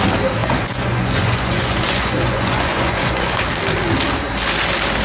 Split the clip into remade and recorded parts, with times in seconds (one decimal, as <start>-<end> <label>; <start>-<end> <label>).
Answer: 0.0-0.4 recorded; 0.4-3.4 remade; 3.4-5.0 recorded